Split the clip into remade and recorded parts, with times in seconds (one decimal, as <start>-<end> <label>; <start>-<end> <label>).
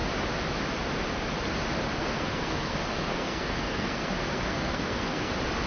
0.0-2.0 recorded; 2.0-5.3 remade; 5.3-5.7 recorded